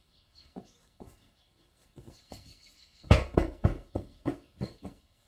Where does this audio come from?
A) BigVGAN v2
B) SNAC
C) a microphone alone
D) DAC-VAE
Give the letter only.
B